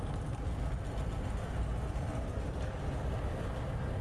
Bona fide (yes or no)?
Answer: yes